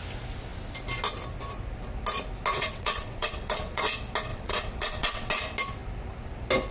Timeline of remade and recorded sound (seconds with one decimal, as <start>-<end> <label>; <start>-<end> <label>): 0.0-2.5 recorded; 2.5-3.8 remade; 3.8-4.3 recorded; 4.3-5.3 remade; 5.3-6.7 recorded